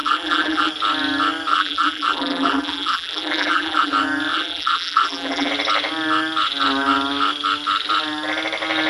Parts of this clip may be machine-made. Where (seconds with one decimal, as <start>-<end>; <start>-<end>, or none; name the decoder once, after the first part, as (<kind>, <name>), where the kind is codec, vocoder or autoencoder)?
0.0-0.7 (vocoder, BigVGAN v2); 1.5-3.9; 4.3-5.5